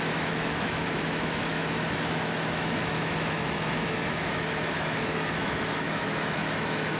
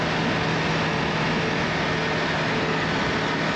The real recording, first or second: second